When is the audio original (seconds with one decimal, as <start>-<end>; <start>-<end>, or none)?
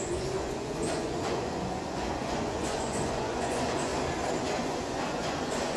3.9-4.4